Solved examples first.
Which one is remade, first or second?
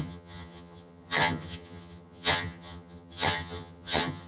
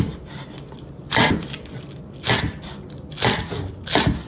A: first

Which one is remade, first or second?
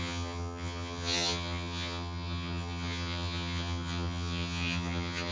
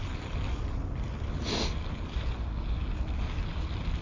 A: first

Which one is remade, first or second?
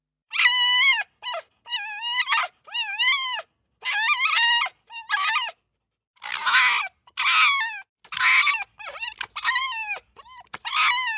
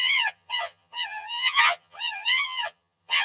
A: second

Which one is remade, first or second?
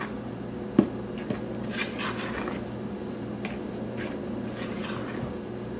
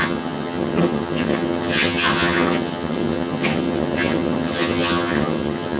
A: second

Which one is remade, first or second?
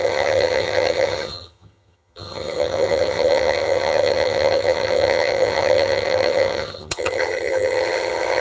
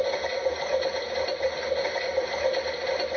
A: first